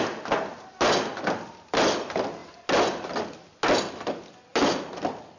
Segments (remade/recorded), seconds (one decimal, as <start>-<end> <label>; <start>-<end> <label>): 0.0-5.4 recorded